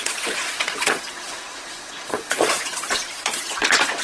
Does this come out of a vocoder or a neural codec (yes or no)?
yes